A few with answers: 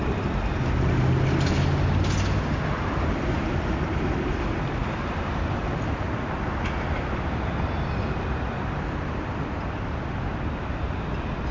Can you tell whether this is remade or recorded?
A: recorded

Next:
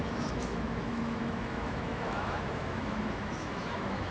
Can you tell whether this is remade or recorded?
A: remade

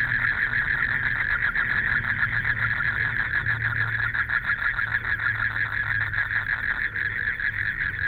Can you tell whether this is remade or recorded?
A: recorded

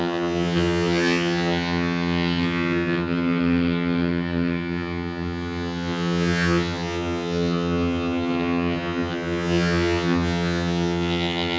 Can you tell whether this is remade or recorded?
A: remade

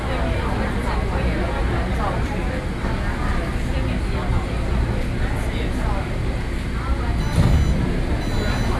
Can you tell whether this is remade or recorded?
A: recorded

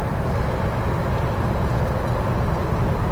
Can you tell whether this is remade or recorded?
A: recorded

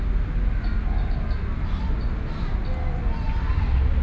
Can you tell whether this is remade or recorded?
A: recorded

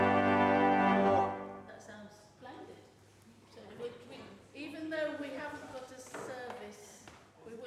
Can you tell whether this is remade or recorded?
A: recorded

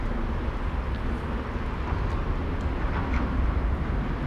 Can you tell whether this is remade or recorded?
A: recorded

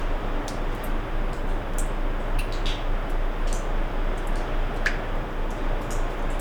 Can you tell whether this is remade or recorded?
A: recorded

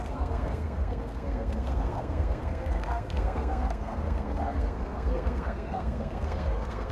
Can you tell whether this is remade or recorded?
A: remade